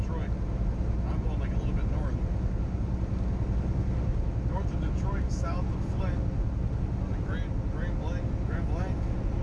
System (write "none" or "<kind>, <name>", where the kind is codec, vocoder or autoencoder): none